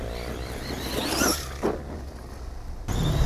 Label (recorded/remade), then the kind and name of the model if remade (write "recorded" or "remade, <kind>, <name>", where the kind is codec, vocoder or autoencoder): recorded